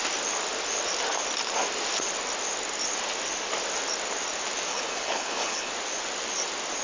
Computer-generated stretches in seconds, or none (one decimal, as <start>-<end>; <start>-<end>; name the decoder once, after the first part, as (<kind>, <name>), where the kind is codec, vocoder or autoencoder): 4.7-5.7 (codec, HILCodec)